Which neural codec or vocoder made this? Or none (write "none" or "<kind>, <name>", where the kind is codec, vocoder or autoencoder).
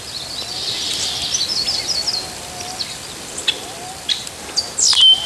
none